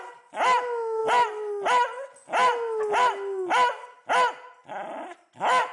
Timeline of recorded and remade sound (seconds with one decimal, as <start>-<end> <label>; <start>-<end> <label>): 0.0-5.7 recorded